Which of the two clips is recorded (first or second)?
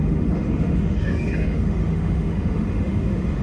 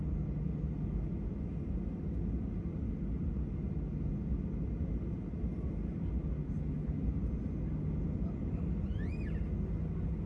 second